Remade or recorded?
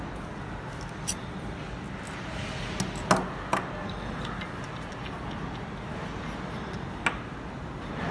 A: recorded